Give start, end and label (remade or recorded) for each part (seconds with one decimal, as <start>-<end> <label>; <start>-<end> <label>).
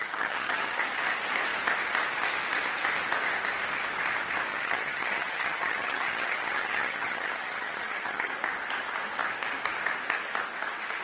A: 0.0-0.8 remade; 0.8-4.5 recorded; 4.5-8.3 remade; 8.3-11.0 recorded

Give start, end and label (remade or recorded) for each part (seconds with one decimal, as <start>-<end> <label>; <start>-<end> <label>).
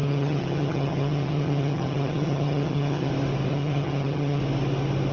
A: 0.0-3.1 remade; 3.1-3.5 recorded; 3.5-4.4 remade; 4.4-5.1 recorded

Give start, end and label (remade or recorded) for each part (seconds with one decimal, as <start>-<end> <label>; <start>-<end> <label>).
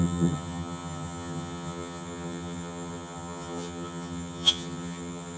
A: 0.0-5.4 remade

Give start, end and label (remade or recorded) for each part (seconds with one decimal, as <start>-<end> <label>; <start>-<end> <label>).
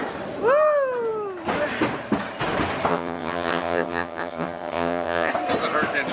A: 0.0-2.9 recorded; 2.9-5.3 remade; 5.3-6.1 recorded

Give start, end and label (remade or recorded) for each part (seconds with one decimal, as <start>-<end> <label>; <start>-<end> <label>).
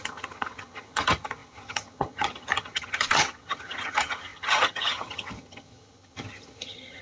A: 0.0-7.0 remade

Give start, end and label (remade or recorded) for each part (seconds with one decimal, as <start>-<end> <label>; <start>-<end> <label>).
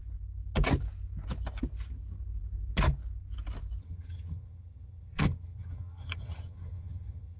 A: 0.0-3.8 recorded; 3.8-7.4 remade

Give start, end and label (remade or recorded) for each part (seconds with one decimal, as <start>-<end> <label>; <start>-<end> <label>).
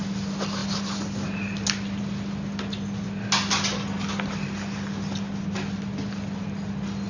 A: 0.0-7.1 recorded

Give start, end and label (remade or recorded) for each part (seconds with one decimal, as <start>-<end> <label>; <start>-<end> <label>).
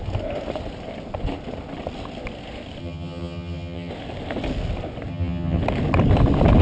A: 0.0-2.8 recorded; 2.8-3.9 remade; 3.9-5.1 recorded; 5.1-5.6 remade; 5.6-6.6 recorded